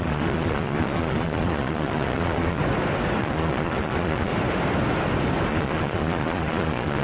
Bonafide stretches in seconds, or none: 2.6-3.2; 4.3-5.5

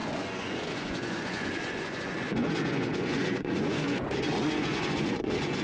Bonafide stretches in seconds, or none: none

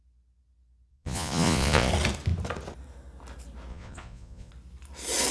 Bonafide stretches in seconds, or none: 0.0-0.9; 1.9-3.7; 4.5-5.3

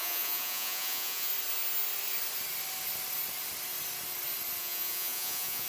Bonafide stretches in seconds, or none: 1.3-4.6

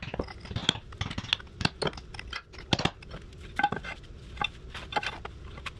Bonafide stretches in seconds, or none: 0.0-5.8

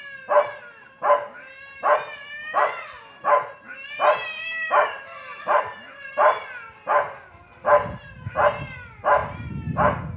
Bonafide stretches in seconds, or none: 0.0-10.2